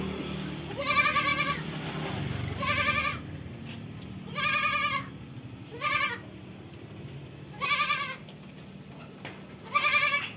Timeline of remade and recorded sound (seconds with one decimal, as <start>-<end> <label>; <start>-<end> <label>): 0.0-10.4 recorded